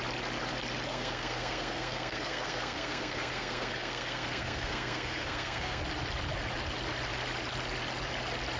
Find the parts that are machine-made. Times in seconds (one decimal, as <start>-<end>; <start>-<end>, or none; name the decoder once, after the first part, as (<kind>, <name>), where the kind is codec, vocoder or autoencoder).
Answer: 0.9-5.8 (codec, SNAC)